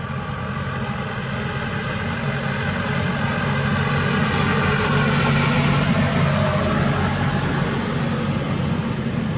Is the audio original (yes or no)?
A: yes